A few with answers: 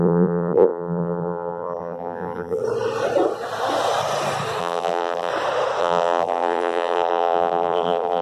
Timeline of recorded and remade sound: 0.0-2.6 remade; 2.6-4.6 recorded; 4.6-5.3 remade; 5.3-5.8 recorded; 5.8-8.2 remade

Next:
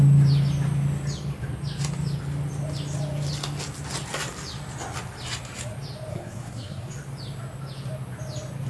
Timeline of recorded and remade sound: 0.0-6.1 recorded; 6.1-6.9 remade; 6.9-8.7 recorded

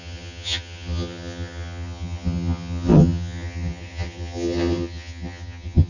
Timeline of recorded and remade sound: 0.0-5.9 remade

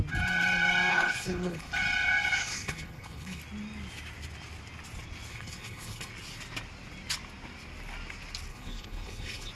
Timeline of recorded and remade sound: 0.0-0.9 recorded; 0.9-1.7 remade; 1.7-2.4 recorded; 2.4-3.4 remade; 3.4-5.3 recorded; 5.3-6.1 remade; 6.1-8.5 recorded; 8.5-9.5 remade

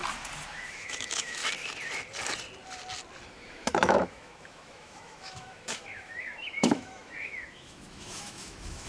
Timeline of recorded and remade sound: 0.0-0.5 recorded; 0.5-1.4 remade; 1.4-3.3 recorded; 3.3-8.9 remade

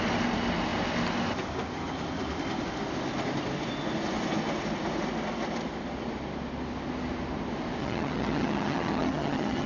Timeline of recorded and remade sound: 0.0-7.8 recorded; 7.8-9.7 remade